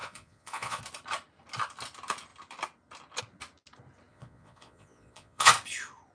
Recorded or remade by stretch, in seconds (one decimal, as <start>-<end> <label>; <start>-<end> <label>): 0.0-0.8 remade; 0.8-4.1 recorded; 4.1-5.5 remade; 5.5-6.1 recorded